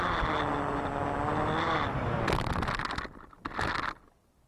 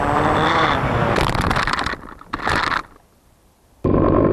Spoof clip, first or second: second